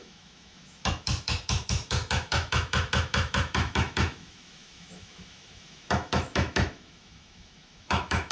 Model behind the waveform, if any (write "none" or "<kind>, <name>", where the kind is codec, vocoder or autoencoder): autoencoder, DAC-VAE